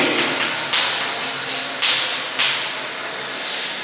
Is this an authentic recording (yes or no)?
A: yes